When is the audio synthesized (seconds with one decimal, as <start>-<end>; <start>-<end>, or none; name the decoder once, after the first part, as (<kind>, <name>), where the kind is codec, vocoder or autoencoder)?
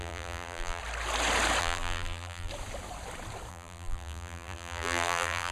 0.0-0.8 (vocoder, BigVGAN v2); 1.6-2.5; 3.5-5.5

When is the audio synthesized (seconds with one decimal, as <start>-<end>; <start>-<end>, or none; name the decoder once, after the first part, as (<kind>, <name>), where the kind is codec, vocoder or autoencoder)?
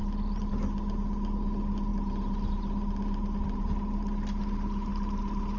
none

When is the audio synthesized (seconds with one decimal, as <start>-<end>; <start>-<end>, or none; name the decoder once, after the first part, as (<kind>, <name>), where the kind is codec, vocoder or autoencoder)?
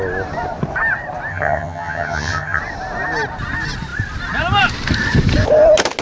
1.3-2.6 (vocoder, HiFi-GAN)